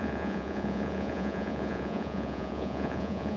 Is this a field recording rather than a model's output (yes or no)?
no